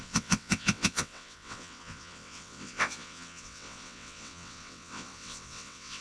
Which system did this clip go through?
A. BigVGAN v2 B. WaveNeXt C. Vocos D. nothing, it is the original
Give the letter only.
B